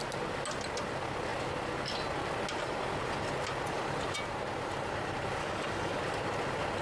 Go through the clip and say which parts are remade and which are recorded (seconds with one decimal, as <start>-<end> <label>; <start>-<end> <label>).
0.0-5.4 recorded; 5.4-6.0 remade; 6.0-6.8 recorded